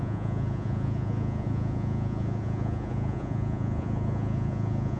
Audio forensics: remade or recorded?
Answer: remade